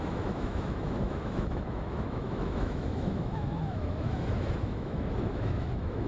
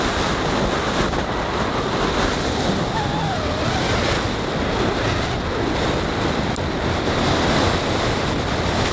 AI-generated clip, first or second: first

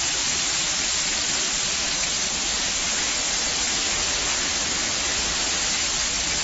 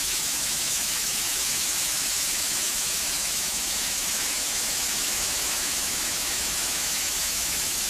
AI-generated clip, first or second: second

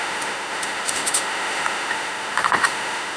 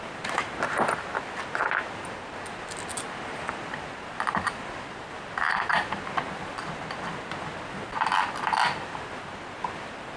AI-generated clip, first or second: first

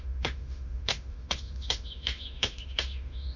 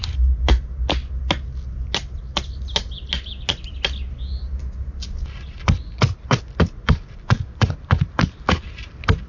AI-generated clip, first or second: first